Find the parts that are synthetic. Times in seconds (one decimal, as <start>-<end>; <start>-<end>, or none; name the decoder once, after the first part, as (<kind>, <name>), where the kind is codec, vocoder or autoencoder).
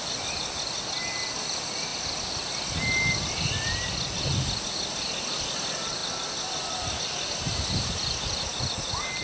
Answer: none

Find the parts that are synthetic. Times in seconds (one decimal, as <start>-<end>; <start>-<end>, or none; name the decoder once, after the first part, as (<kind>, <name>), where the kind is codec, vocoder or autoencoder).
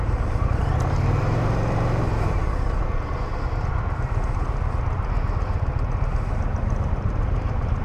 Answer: 0.0-0.6 (vocoder, BigVGAN v2); 1.2-2.4; 6.9-7.8